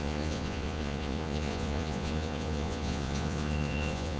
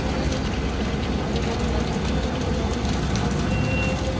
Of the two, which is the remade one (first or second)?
first